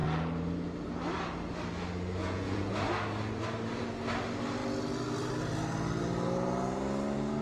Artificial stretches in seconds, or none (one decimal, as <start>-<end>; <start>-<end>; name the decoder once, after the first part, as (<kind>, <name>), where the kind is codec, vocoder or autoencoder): 2.2-2.7 (vocoder, Vocos)